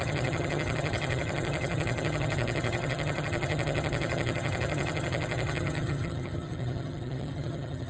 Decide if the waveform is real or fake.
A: fake